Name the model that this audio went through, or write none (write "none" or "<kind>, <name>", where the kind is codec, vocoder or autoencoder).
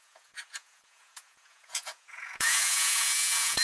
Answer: vocoder, Vocos